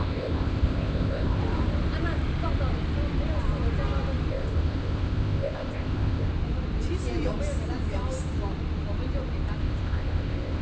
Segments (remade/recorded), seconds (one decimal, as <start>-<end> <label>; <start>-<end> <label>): 0.0-1.4 remade; 1.4-4.3 recorded; 4.3-6.3 remade; 6.3-9.6 recorded; 9.6-10.6 remade